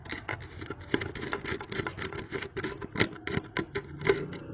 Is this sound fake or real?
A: real